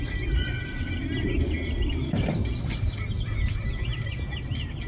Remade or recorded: recorded